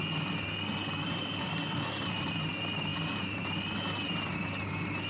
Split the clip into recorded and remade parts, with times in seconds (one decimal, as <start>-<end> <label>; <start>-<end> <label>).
0.0-1.2 recorded; 1.2-2.5 remade; 2.5-5.1 recorded